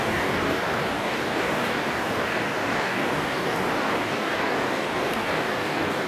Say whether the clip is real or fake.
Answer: fake